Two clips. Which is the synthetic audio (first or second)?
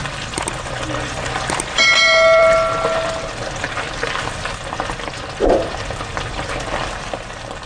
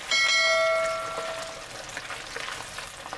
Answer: first